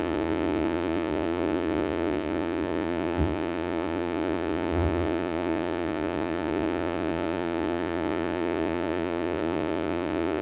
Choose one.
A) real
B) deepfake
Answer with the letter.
B